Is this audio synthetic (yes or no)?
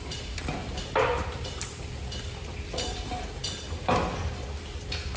no